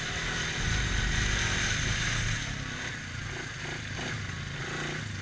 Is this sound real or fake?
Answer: real